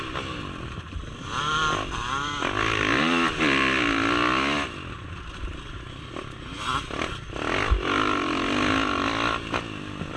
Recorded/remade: recorded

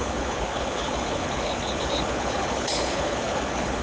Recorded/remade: remade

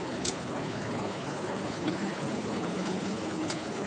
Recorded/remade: remade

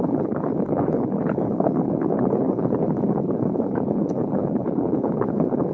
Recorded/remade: remade